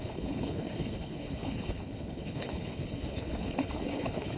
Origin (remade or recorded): remade